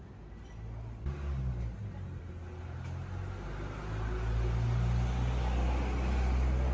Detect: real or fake real